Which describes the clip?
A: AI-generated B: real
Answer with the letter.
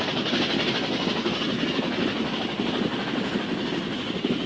B